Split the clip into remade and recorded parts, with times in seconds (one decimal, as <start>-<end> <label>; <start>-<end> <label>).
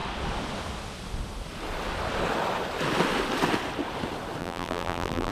0.0-4.4 recorded; 4.4-5.3 remade